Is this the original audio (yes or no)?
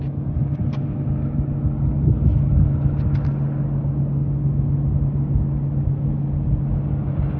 yes